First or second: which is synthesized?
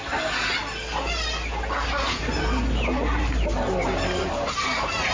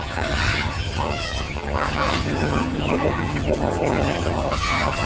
second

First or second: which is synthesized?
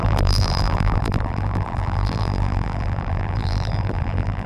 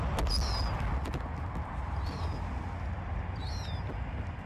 first